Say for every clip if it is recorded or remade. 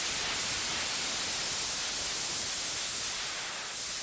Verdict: recorded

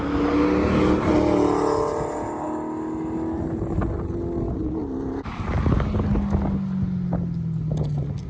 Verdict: recorded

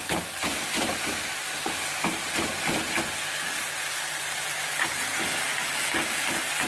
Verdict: recorded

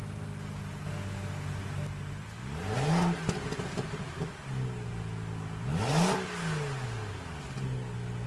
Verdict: recorded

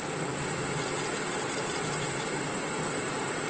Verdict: remade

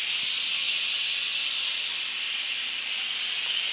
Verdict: recorded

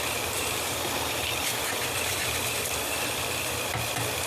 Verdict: remade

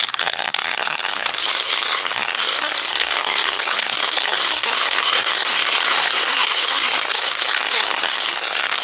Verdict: remade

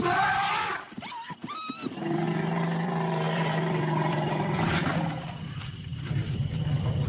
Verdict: remade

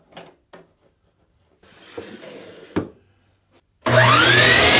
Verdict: recorded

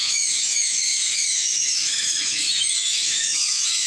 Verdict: remade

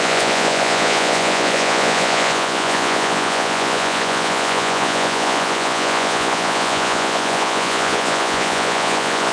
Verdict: remade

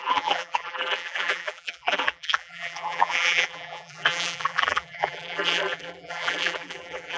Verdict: remade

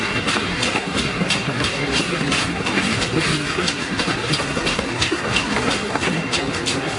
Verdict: remade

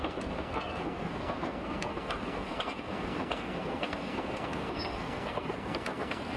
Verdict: remade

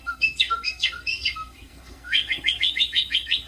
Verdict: remade